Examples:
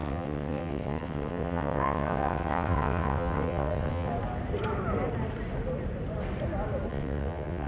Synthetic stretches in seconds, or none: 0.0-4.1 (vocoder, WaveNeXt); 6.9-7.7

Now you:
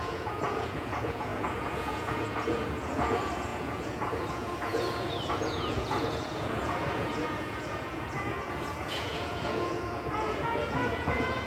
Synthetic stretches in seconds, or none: 0.0-11.5 (vocoder, Vocos)

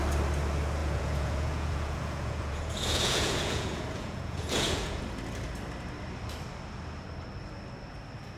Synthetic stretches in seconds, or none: 0.8-5.0 (vocoder, Vocos)